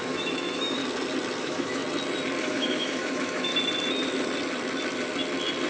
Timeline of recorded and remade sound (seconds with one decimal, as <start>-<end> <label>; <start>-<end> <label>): 0.0-0.8 remade; 0.8-1.4 recorded; 1.4-1.8 remade; 1.8-2.4 recorded; 2.4-3.5 remade; 3.5-5.7 recorded